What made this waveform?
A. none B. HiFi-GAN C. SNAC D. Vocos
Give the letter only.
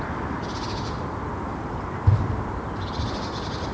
A